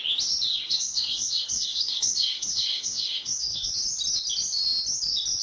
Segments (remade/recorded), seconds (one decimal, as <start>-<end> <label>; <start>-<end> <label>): 0.0-0.5 recorded; 0.5-3.7 remade; 3.7-5.4 recorded